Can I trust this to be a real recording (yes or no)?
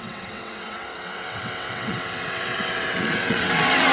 no